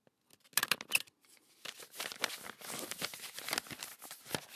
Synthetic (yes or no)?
no